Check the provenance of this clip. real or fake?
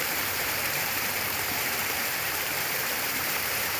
fake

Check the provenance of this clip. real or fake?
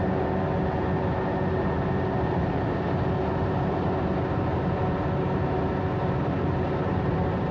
real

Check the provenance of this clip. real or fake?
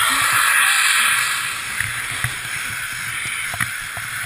real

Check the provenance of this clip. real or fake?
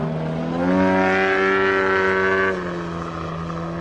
real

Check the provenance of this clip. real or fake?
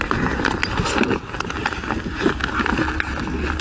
real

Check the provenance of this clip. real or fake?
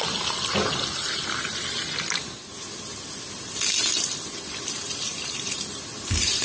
real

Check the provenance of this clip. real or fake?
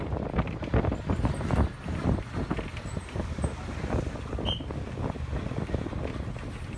fake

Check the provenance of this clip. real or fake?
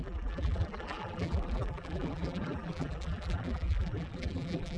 fake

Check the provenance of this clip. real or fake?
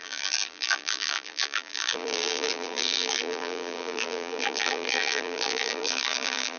fake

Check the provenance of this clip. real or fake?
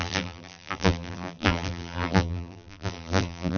fake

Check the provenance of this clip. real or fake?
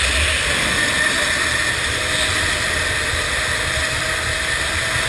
real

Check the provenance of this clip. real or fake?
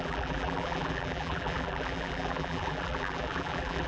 fake